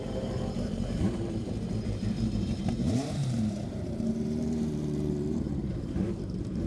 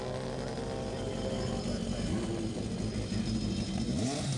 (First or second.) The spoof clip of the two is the first